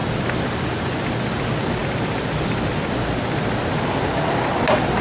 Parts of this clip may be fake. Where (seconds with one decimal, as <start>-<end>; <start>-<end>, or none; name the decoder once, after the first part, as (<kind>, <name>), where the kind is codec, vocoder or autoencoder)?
none